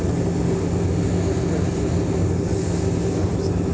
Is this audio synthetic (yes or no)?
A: no